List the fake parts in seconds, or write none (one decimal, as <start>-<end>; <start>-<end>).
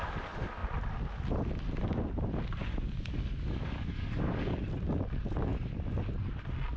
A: 2.6-4.6